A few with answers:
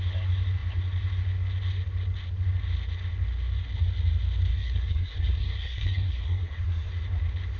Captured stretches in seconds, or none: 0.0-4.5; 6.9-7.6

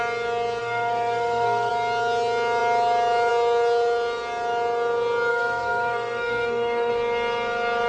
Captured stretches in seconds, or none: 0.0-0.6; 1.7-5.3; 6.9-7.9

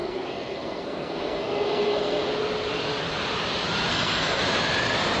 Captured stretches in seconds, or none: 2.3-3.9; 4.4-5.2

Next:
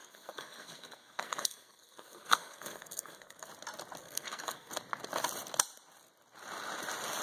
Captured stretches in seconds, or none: 3.5-4.0; 4.7-7.2

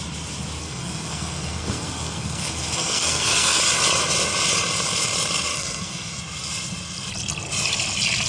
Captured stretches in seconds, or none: 0.0-0.6; 3.6-5.5; 6.2-8.3

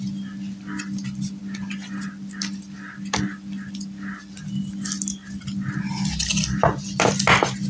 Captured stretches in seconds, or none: 0.0-7.7

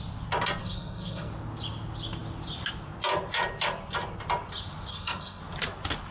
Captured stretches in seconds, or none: 0.0-0.6; 1.3-4.9; 5.4-6.1